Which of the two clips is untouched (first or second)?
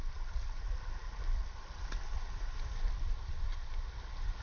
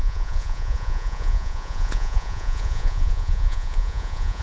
first